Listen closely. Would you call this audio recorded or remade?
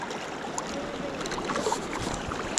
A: recorded